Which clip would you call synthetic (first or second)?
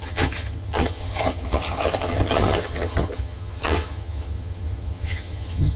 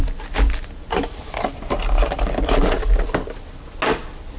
first